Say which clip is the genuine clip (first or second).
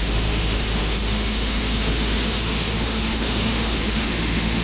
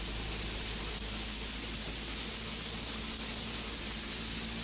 second